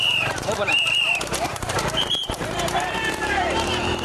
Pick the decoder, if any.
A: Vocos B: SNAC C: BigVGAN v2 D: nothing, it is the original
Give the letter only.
C